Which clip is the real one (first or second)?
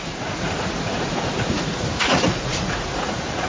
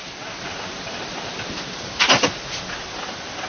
second